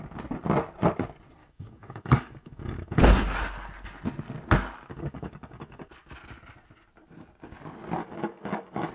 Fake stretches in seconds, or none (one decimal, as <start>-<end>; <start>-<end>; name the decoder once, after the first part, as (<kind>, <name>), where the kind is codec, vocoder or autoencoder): 1.4-3.0 (codec, DAC); 4.9-5.9; 8.0-8.9